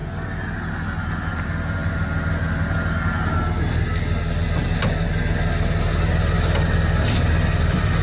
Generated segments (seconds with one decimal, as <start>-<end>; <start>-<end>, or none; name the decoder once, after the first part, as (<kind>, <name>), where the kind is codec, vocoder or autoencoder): 1.4-1.8 (vocoder, BigVGAN v2); 5.9-8.0